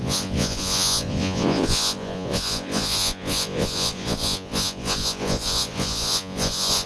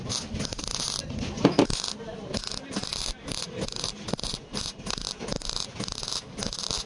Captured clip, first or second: second